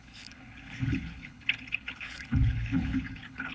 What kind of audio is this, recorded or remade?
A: remade